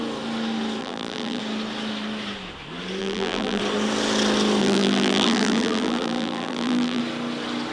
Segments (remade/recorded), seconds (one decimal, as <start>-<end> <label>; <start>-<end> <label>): 0.0-0.8 recorded; 0.8-1.4 remade; 1.4-3.0 recorded; 3.0-3.6 remade; 3.6-4.6 recorded; 4.6-7.0 remade; 7.0-7.7 recorded